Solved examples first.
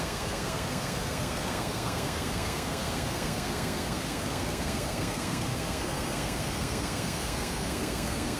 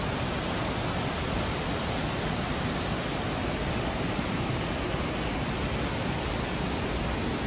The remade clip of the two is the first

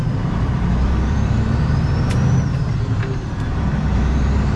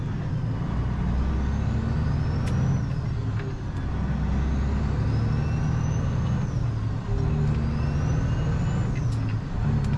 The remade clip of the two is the first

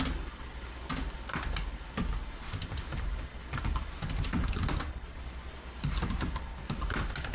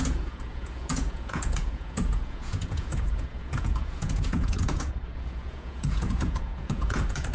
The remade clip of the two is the second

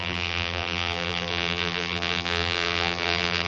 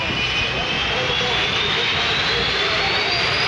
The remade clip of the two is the first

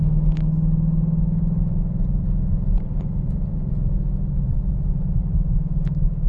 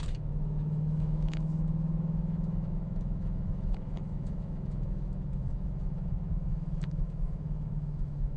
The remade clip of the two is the second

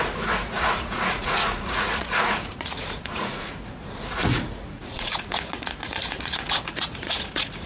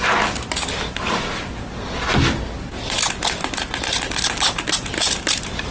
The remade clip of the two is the first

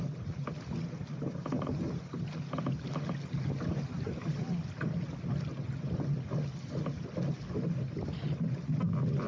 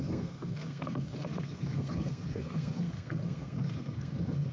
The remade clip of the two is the second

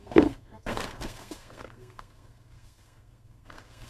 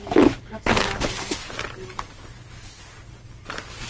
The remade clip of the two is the first